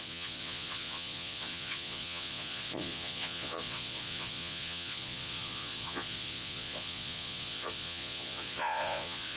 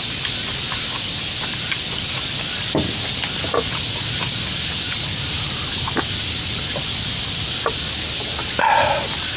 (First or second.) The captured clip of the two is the second